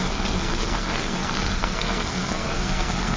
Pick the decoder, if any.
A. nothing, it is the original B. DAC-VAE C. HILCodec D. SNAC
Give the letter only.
D